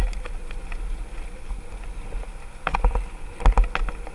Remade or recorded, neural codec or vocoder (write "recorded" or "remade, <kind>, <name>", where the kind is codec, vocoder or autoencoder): recorded